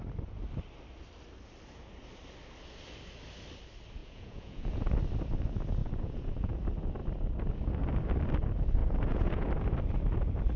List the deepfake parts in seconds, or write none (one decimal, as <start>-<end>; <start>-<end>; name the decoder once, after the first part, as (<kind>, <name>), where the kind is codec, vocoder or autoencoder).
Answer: 4.0-4.9 (vocoder, Vocos); 5.8-6.6; 8.8-9.5